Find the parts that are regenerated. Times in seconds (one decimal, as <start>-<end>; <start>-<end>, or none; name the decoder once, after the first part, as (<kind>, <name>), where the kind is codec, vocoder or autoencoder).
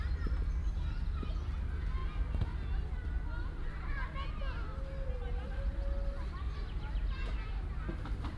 0.6-1.3 (vocoder, BigVGAN v2)